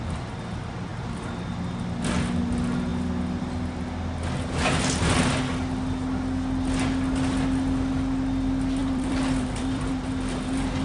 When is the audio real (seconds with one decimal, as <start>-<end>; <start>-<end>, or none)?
0.0-8.8; 9.9-10.8